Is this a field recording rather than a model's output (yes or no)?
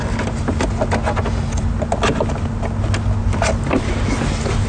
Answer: yes